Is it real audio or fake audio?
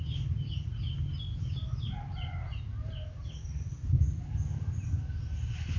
real